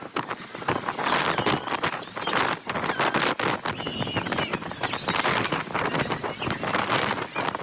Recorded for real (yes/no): yes